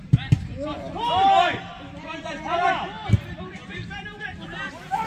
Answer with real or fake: real